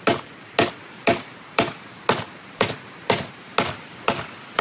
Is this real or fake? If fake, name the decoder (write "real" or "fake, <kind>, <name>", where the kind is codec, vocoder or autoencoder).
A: real